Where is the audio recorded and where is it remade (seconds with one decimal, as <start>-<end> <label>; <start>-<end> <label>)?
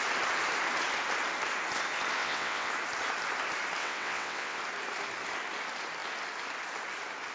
0.0-2.2 recorded; 2.2-2.7 remade; 2.7-3.8 recorded; 3.8-4.6 remade; 4.6-7.3 recorded